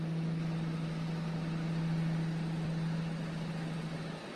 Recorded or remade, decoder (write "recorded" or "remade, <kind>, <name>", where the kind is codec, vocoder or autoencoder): recorded